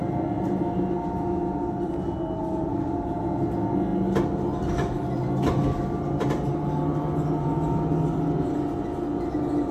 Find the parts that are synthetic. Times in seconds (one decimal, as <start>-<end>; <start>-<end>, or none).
none